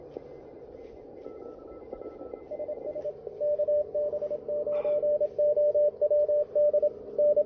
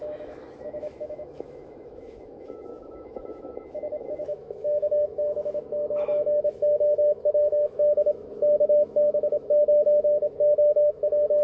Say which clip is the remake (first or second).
second